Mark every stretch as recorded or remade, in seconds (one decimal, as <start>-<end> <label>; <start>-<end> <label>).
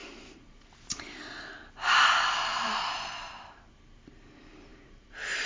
0.0-1.0 remade; 1.0-2.5 recorded; 2.5-3.6 remade; 3.6-4.7 recorded; 4.7-5.5 remade